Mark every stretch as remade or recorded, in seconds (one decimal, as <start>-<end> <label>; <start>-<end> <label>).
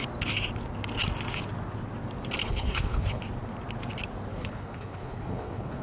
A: 0.0-2.4 recorded; 2.4-3.2 remade; 3.2-4.3 recorded; 4.3-5.8 remade